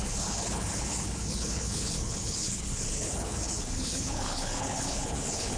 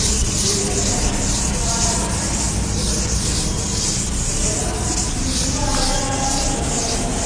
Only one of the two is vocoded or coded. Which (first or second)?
first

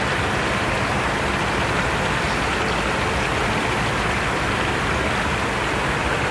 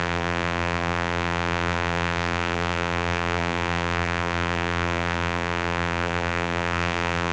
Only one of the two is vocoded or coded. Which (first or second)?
second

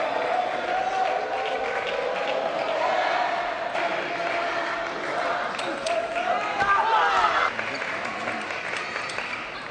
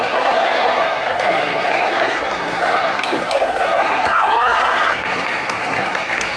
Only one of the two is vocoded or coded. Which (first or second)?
second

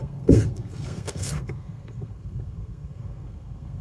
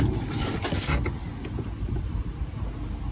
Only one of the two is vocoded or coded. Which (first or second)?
first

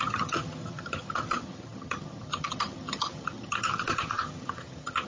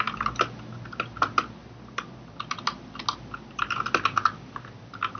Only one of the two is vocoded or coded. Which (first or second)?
first